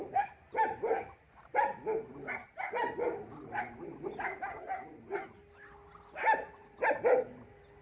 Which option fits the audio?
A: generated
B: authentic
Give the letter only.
B